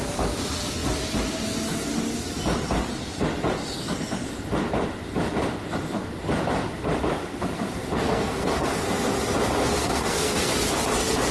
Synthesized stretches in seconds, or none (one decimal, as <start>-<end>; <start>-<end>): 7.2-8.9; 9.6-10.5

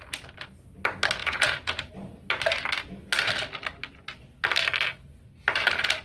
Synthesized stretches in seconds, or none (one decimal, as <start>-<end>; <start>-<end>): 1.2-1.9

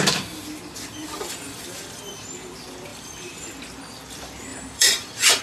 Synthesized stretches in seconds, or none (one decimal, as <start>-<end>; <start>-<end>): 1.0-2.0; 2.9-3.5; 4.5-5.4

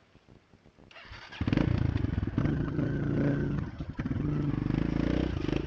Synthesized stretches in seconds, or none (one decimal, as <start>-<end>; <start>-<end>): 2.4-4.5

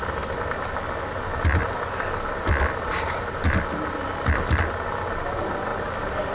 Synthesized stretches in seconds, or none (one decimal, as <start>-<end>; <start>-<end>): none

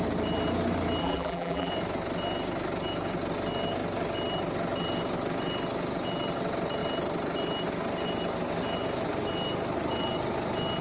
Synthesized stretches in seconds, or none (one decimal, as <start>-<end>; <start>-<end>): 1.0-1.7

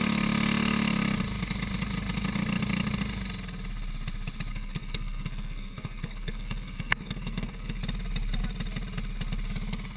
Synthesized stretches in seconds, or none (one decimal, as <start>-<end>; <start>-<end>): 4.5-7.8

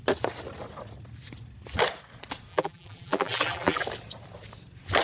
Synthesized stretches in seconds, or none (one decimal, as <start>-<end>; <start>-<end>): 2.5-3.8